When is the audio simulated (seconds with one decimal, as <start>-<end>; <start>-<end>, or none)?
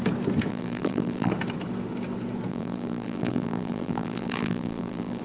0.5-1.3; 2.5-5.2